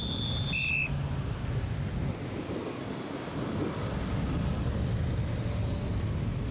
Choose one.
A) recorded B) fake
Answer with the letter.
A